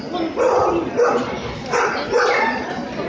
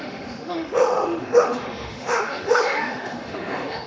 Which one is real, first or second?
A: first